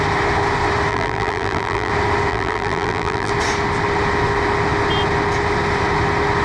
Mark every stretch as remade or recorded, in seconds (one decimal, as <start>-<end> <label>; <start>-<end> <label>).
0.0-0.9 recorded; 0.9-1.9 remade; 1.9-2.3 recorded; 2.3-3.3 remade; 3.3-6.4 recorded